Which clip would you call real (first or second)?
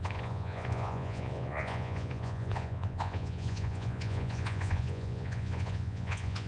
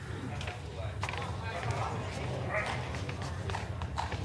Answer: second